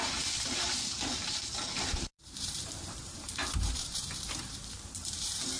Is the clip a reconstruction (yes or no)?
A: yes